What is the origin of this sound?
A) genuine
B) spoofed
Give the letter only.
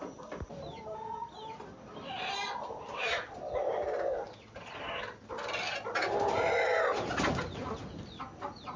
A